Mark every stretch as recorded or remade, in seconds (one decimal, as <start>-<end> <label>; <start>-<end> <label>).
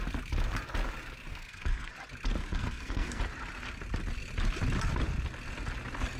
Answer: 0.0-1.3 recorded; 1.3-1.9 remade; 1.9-2.4 recorded; 2.4-3.2 remade; 3.2-6.2 recorded